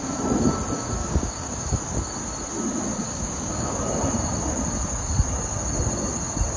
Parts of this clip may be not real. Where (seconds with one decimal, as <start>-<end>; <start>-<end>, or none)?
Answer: 1.0-1.8; 2.9-3.8